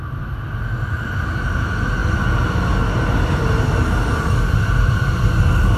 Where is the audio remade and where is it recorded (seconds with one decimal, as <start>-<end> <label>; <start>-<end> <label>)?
0.0-5.8 recorded